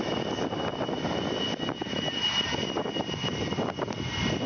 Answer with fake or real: real